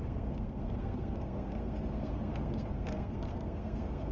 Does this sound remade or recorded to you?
remade